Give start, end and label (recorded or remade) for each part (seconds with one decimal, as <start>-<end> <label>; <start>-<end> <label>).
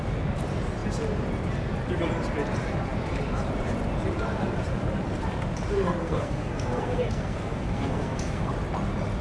0.0-6.0 recorded; 6.0-8.5 remade; 8.5-9.2 recorded